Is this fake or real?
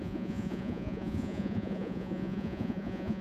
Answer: fake